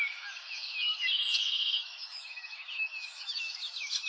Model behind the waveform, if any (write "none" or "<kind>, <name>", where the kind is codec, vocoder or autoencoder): autoencoder, DAC-VAE